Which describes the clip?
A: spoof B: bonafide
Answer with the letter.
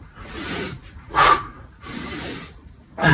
A